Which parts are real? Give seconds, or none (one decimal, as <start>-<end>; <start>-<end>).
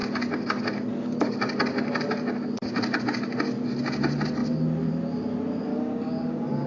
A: 0.0-5.7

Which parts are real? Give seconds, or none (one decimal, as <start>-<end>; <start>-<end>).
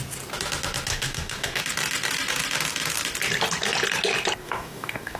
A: 0.0-0.9; 1.6-4.4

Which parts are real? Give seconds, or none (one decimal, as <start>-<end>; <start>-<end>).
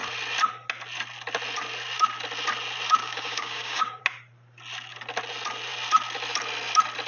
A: 0.0-3.0; 4.0-7.1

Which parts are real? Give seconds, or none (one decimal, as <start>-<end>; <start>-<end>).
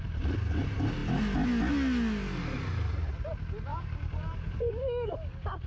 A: 0.0-3.7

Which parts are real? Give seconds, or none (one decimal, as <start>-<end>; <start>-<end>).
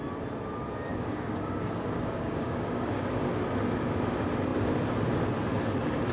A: 0.0-0.9; 3.3-6.1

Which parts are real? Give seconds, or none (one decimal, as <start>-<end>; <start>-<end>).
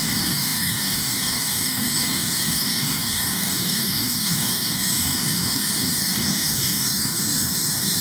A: none